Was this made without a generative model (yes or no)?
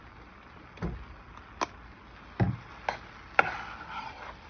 yes